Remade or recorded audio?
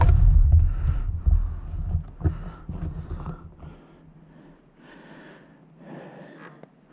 recorded